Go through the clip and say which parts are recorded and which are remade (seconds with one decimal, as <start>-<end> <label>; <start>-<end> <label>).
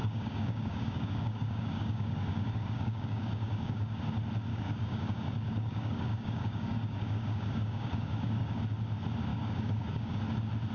0.0-4.0 remade; 4.0-4.5 recorded; 4.5-8.6 remade; 8.6-9.3 recorded; 9.3-10.2 remade; 10.2-10.7 recorded